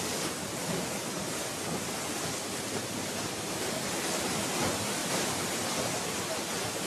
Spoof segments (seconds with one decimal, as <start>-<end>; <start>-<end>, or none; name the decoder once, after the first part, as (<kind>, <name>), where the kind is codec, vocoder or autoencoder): 3.0-3.8 (vocoder, BigVGAN v2); 5.0-6.3